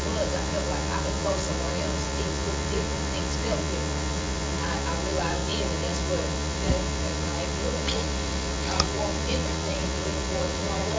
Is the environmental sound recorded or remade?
remade